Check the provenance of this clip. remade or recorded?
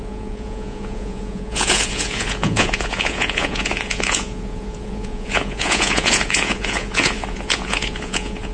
remade